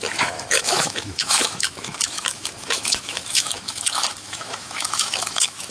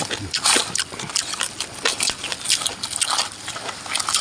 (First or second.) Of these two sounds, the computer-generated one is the first